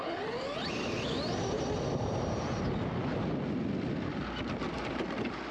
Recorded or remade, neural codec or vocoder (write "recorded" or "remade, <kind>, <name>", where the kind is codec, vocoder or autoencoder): recorded